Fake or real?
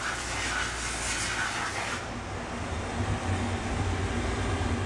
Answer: real